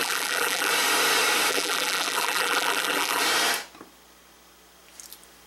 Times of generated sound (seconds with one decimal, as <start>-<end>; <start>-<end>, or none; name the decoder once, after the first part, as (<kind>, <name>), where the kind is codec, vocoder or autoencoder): 0.0-0.7 (vocoder, BigVGAN v2); 1.5-3.2